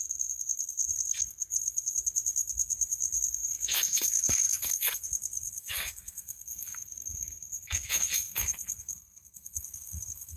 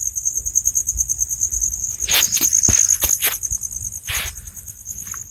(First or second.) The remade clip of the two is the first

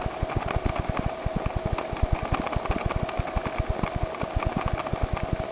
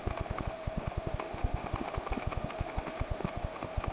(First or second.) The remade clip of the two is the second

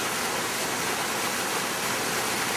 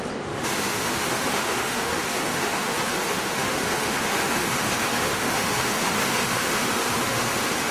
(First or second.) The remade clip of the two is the second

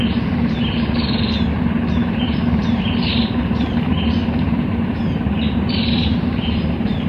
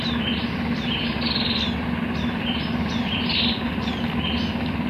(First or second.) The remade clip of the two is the first